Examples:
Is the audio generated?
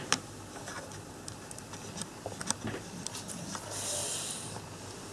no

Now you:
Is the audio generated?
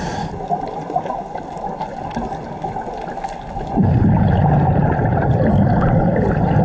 no